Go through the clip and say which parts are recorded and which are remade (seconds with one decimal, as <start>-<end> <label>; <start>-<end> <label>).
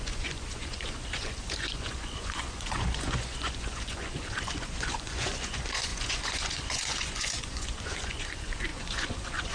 0.0-9.5 remade